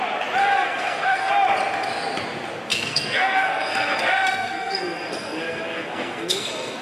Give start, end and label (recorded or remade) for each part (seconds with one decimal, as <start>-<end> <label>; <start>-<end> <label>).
0.0-0.4 recorded; 0.4-1.3 remade; 1.3-2.7 recorded; 2.7-6.8 remade